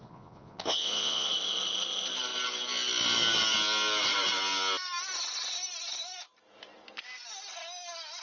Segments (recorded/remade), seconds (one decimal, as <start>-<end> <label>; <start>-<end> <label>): 0.0-1.3 remade; 1.3-8.2 recorded